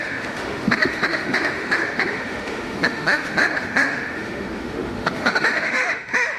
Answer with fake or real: fake